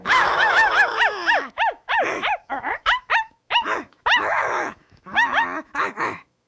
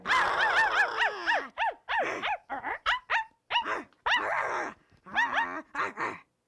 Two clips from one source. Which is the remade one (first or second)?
first